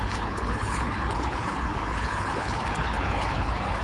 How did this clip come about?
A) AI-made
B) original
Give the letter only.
A